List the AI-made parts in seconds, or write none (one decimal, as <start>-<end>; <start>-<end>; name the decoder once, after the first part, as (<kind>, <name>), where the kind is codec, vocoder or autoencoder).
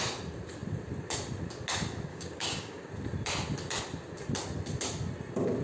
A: 2.1-2.9 (codec, DAC)